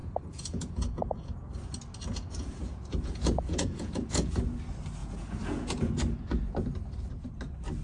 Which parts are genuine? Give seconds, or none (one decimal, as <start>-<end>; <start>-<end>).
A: 1.5-2.1; 4.4-5.0; 5.9-7.8